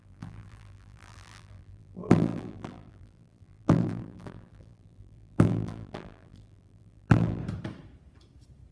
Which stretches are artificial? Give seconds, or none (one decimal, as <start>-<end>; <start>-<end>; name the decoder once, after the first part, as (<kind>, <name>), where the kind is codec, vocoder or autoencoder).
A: 0.0-7.4 (vocoder, BigVGAN v2)

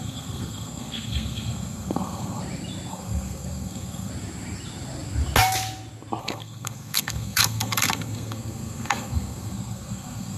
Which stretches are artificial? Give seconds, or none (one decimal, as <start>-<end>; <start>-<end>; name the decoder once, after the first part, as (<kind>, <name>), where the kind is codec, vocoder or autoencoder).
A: 0.0-2.4 (codec, SNAC); 2.9-4.1; 6.2-10.4

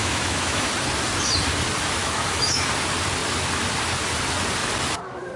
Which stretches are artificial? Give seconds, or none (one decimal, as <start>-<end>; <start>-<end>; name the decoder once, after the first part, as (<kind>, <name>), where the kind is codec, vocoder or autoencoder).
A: 0.0-0.7 (autoencoder, DAC-VAE); 2.0-2.7

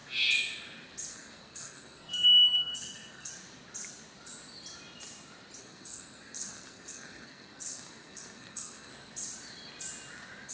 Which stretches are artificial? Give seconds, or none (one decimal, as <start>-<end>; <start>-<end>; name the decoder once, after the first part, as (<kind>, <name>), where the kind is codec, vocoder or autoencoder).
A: 1.1-3.3 (codec, SNAC); 5.6-8.9

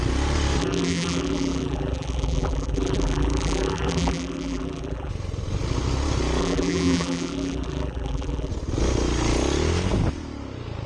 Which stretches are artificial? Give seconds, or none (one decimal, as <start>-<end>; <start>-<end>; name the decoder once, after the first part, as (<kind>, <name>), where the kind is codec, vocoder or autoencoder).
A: 0.6-5.1 (vocoder, BigVGAN v2); 6.4-8.5